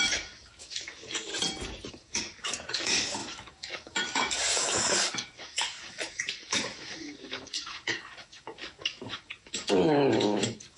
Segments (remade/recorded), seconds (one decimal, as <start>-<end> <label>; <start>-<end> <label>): 0.0-1.3 remade; 1.3-1.9 recorded; 1.9-10.8 remade